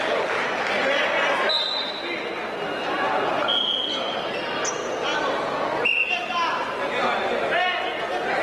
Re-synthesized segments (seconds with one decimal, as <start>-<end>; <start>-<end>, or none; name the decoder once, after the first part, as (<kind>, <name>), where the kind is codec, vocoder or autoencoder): none